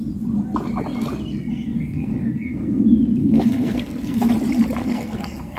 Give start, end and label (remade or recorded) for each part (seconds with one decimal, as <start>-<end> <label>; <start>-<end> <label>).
0.0-1.5 recorded; 1.5-2.8 remade; 2.8-3.2 recorded; 3.2-4.3 remade; 4.3-4.8 recorded; 4.8-5.6 remade